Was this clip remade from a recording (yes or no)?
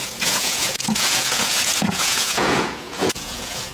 yes